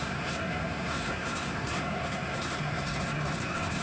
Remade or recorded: remade